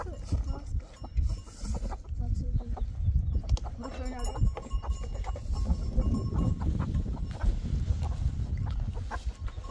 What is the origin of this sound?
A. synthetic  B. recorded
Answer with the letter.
B